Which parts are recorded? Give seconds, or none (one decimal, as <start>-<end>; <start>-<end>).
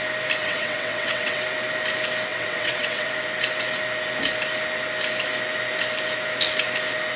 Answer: 0.0-0.4; 1.4-2.3; 3.1-7.2